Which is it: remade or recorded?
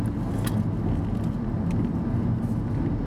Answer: recorded